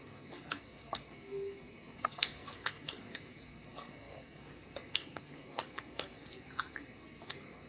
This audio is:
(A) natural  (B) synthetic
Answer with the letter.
B